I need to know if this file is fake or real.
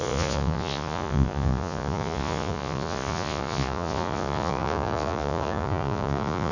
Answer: fake